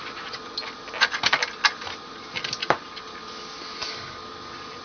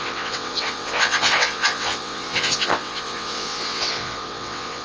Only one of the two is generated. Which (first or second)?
second